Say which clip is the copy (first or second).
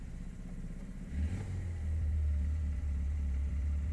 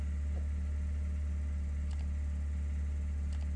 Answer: first